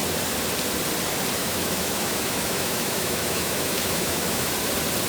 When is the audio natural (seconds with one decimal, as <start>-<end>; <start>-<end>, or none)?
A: 0.0-1.4; 4.5-5.1